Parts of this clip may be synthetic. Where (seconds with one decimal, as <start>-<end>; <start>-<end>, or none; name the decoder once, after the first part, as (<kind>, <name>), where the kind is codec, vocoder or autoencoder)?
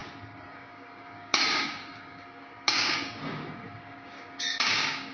0.5-5.1 (codec, DAC)